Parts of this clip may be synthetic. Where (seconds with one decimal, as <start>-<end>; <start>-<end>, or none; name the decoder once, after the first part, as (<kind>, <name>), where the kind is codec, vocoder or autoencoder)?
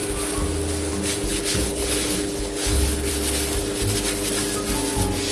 1.3-3.1 (codec, HILCodec)